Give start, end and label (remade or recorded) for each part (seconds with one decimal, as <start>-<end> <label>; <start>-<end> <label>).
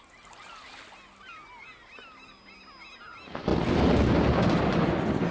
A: 0.0-5.3 recorded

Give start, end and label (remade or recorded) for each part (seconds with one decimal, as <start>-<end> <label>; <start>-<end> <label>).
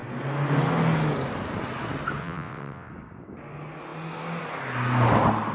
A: 0.0-2.2 recorded; 2.2-2.9 remade; 2.9-5.5 recorded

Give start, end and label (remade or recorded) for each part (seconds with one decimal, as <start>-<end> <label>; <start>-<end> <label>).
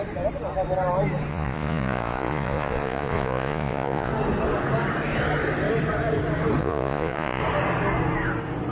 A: 0.0-1.3 recorded; 1.3-4.1 remade; 4.1-6.6 recorded; 6.6-7.4 remade; 7.4-8.7 recorded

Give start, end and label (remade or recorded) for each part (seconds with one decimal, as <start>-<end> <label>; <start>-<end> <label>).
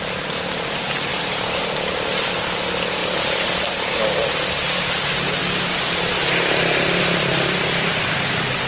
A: 0.0-1.1 recorded; 1.1-1.6 remade; 1.6-5.4 recorded; 5.4-7.9 remade; 7.9-8.7 recorded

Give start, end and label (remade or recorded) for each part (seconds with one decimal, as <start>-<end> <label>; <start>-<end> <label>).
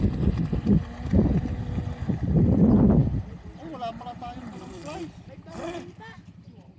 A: 0.0-3.9 recorded; 3.9-4.8 remade; 4.8-6.8 recorded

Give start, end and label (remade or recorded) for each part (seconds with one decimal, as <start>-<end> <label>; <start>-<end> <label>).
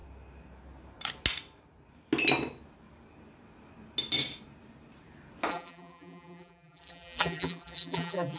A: 0.0-5.5 recorded; 5.5-8.4 remade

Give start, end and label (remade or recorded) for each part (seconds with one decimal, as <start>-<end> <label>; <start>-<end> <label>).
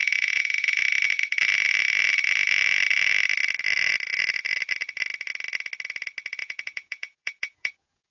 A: 0.0-0.8 remade; 0.8-6.4 recorded; 6.4-8.1 remade